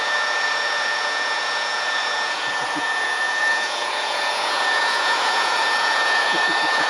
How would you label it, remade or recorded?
remade